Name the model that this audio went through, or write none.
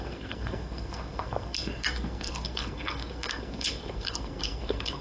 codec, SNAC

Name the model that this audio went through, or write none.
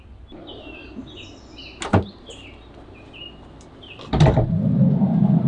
none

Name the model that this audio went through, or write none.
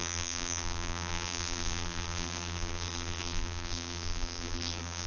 vocoder, BigVGAN v2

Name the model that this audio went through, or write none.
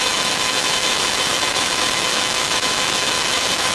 autoencoder, DAC-VAE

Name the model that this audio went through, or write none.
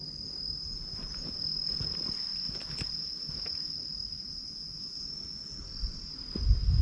none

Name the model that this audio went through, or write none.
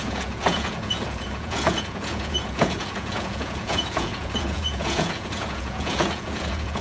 vocoder, Vocos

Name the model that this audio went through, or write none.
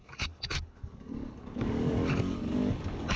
codec, DAC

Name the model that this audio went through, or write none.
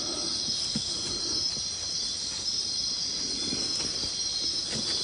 none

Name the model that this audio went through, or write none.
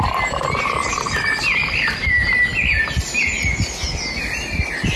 none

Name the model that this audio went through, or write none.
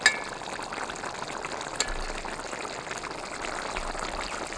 none